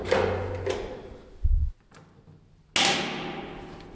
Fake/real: real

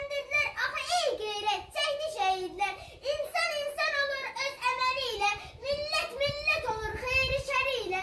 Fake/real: real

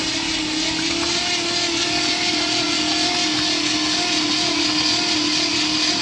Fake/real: real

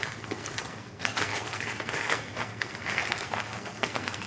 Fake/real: fake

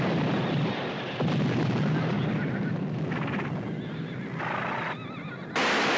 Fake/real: real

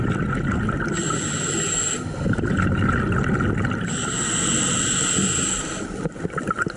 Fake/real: real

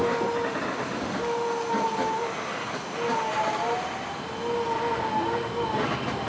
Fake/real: real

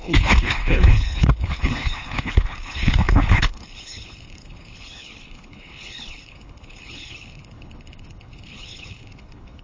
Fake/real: fake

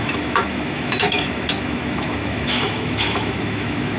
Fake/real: fake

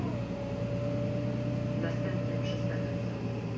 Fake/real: real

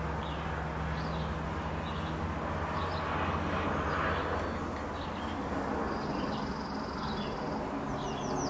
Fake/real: real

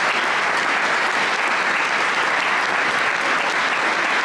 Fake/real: real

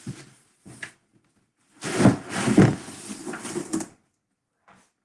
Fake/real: real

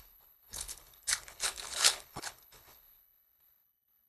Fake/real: fake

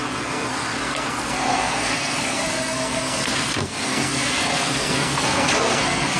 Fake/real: fake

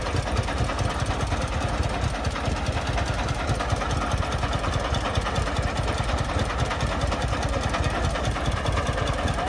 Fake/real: real